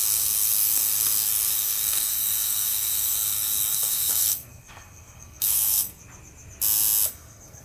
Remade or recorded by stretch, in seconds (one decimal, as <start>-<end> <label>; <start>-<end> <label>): 0.0-6.0 remade; 6.0-7.1 recorded; 7.1-7.6 remade